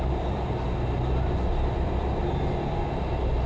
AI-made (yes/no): no